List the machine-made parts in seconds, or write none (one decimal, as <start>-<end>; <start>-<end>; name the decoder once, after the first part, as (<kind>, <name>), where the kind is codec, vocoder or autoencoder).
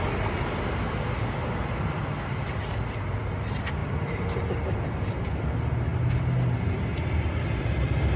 none